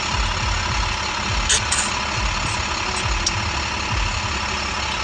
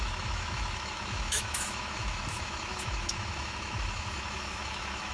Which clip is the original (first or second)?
first